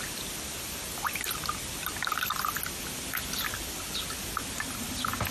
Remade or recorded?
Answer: recorded